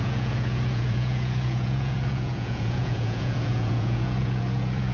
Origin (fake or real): fake